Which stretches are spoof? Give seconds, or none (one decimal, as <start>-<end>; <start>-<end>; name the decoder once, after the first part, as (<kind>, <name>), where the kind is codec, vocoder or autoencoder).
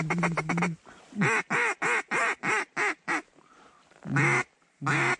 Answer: none